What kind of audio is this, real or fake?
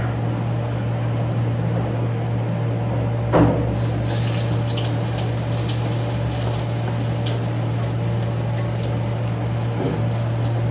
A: real